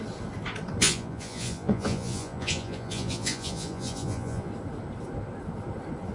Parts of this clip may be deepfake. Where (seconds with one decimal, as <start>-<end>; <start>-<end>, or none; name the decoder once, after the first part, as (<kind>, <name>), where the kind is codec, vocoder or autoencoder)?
0.8-4.5 (vocoder, Vocos)